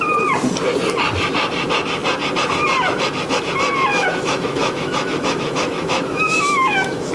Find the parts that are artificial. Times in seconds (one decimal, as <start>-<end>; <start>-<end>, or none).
3.9-7.1